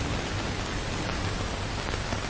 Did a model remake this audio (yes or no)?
no